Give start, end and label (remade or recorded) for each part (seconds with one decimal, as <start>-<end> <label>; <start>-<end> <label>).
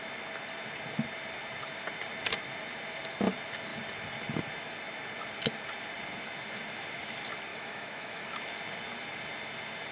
0.0-7.5 recorded; 7.5-8.2 remade; 8.2-9.9 recorded